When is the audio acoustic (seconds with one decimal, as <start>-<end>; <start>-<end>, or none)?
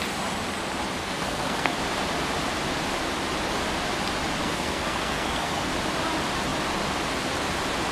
0.0-1.0; 1.8-4.4; 5.7-7.9